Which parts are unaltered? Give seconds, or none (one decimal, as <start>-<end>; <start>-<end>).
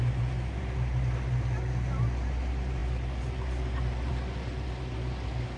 0.0-5.6